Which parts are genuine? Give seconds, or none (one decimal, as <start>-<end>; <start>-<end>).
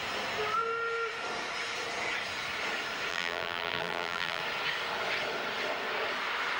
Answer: 0.0-3.1; 4.4-6.6